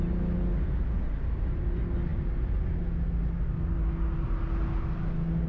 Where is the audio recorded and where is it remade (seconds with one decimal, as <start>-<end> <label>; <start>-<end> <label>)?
0.0-5.5 recorded